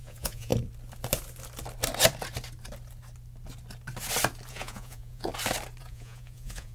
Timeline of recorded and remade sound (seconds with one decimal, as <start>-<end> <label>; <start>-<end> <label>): 0.0-0.5 remade; 0.5-4.5 recorded; 4.5-5.3 remade; 5.3-5.8 recorded; 5.8-6.7 remade